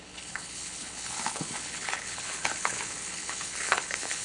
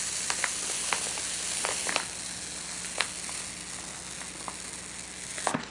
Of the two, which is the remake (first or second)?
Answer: first